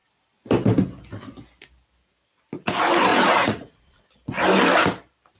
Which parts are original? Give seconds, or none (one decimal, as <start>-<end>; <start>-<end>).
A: 0.0-3.1; 4.1-5.4